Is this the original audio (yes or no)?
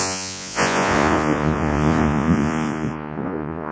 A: no